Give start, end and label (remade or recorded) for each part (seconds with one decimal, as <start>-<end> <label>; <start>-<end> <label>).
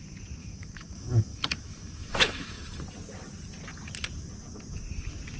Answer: 0.0-0.4 recorded; 0.4-2.8 remade; 2.8-5.4 recorded